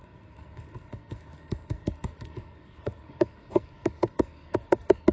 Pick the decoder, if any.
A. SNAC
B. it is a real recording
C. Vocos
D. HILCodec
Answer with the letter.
A